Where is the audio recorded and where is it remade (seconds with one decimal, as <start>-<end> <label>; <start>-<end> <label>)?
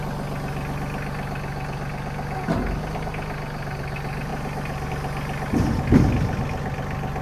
0.0-4.3 recorded; 4.3-4.9 remade; 4.9-7.2 recorded